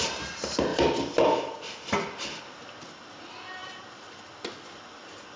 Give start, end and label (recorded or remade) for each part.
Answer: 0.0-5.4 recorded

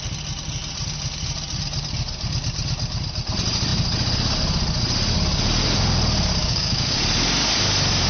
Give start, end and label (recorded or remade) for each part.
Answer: 0.0-6.4 recorded; 6.4-7.0 remade; 7.0-8.1 recorded

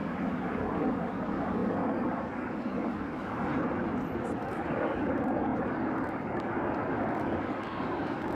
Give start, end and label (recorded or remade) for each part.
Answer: 0.0-3.5 remade; 3.5-4.4 recorded; 4.4-8.3 remade